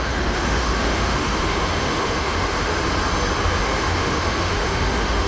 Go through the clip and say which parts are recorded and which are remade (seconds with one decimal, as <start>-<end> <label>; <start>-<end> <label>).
0.0-2.7 remade; 2.7-3.6 recorded; 3.6-5.3 remade